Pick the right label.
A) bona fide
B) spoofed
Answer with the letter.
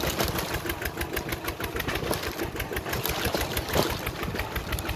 A